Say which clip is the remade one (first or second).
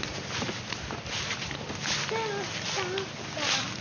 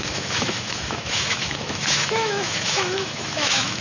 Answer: second